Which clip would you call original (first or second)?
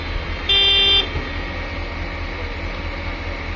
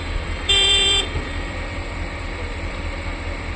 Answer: first